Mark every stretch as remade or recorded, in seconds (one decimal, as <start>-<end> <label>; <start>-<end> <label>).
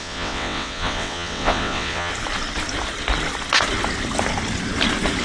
0.0-2.1 remade; 2.1-5.2 recorded